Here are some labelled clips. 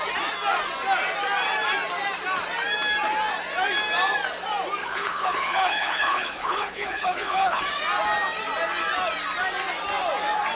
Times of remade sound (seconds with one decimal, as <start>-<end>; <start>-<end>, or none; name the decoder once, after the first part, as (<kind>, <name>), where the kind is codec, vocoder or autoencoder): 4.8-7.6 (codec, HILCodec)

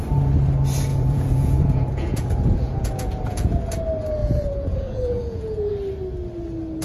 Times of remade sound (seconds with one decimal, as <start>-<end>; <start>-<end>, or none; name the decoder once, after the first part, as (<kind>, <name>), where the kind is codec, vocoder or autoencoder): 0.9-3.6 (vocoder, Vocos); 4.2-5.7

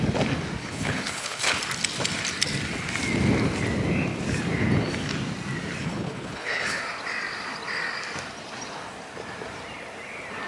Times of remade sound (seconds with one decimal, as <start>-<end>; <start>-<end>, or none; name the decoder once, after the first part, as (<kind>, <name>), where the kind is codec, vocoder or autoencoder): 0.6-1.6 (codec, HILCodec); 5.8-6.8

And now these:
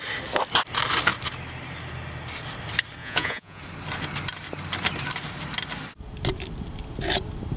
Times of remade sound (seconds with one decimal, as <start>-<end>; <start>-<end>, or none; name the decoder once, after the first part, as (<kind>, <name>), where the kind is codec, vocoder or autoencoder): 3.0-3.6 (vocoder, Vocos)

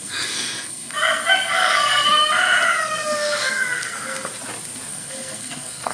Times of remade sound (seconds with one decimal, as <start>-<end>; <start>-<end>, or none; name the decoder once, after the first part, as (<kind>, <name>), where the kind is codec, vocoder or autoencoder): 0.0-2.2 (codec, SNAC); 2.8-4.3; 4.9-5.9